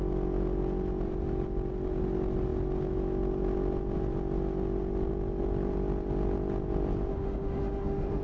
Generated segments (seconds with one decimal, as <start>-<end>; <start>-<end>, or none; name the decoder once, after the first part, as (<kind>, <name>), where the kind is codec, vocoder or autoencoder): 7.1-8.2 (autoencoder, DAC-VAE)